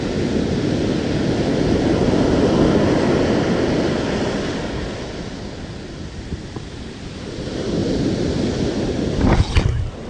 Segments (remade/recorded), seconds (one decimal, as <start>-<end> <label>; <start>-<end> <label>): 0.0-10.1 recorded

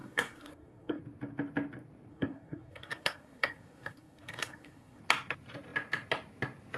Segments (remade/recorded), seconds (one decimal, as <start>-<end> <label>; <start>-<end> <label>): 0.0-1.0 remade; 1.0-2.1 recorded; 2.1-5.0 remade; 5.0-6.8 recorded

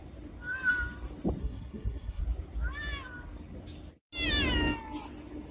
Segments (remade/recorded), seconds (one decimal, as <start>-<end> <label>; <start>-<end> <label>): 0.0-1.4 recorded; 1.4-2.2 remade; 2.2-5.5 recorded

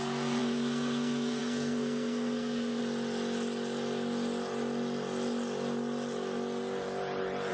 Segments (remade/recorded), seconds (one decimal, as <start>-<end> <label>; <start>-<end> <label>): 0.0-2.8 remade; 2.8-7.5 recorded

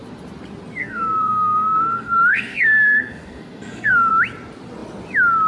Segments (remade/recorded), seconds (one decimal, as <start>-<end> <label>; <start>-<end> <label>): 0.0-0.8 recorded; 0.8-4.1 remade; 4.1-5.5 recorded

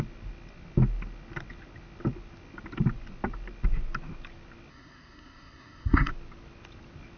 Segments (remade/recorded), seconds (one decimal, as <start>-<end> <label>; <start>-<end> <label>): 0.0-4.7 recorded; 4.7-6.1 remade; 6.1-7.2 recorded

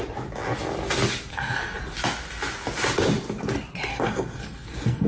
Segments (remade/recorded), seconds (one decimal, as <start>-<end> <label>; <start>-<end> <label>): 0.0-1.3 recorded; 1.3-1.8 remade; 1.8-3.9 recorded; 3.9-5.1 remade